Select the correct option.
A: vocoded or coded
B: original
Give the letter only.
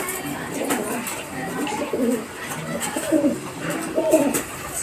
B